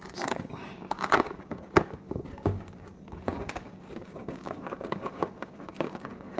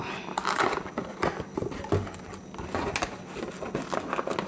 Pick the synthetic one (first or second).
first